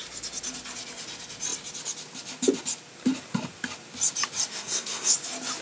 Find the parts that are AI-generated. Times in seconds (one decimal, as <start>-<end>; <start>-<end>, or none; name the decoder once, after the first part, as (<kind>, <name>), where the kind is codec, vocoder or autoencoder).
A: 4.5-5.1 (codec, SNAC)